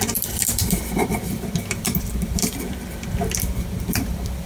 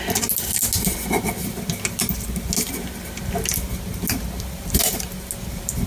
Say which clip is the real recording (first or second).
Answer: second